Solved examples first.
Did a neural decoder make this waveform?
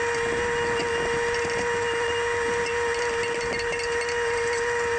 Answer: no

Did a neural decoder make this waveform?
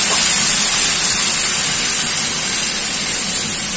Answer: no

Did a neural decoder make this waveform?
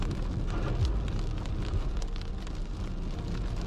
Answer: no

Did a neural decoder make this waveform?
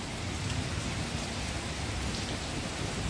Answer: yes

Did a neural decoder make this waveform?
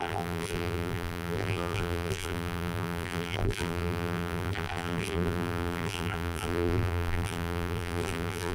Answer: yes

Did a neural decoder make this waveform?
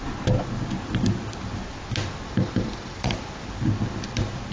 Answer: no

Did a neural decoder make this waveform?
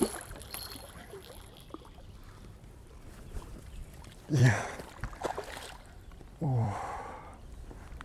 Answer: yes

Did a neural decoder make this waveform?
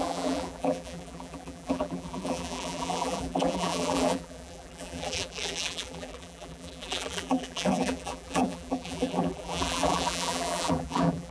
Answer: yes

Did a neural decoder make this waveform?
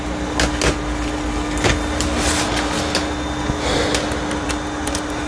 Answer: no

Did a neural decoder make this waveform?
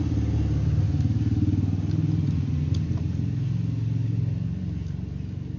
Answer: no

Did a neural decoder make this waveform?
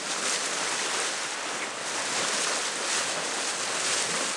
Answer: no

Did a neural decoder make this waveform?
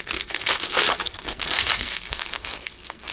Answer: yes